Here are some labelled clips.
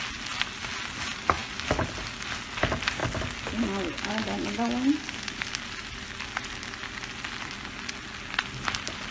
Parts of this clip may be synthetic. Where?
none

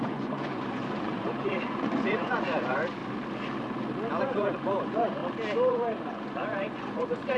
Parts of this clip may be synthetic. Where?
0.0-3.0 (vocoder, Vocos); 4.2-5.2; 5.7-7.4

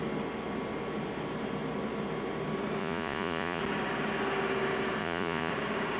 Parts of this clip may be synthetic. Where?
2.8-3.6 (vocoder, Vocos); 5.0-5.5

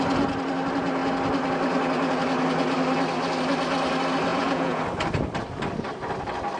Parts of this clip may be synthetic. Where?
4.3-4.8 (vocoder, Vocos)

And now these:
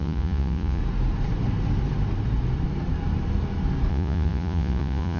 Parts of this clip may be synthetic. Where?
0.0-0.8 (vocoder, Vocos); 3.9-5.2